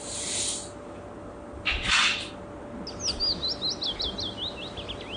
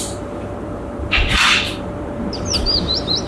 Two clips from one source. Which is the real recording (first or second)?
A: first